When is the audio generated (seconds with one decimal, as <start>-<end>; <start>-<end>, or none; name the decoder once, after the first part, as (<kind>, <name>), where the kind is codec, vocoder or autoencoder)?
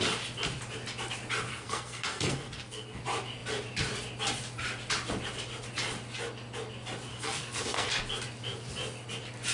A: 1.5-3.0 (codec, SNAC); 7.1-8.0